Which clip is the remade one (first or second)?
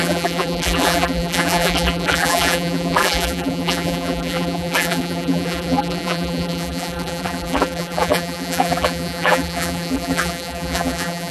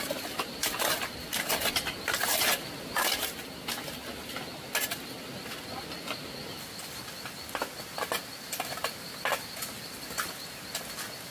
first